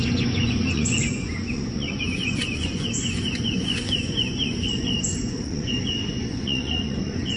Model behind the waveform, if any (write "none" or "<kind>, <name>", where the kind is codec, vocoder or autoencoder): vocoder, Vocos